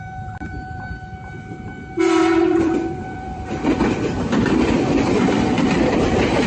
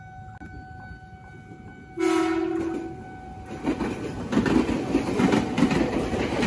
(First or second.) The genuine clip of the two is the second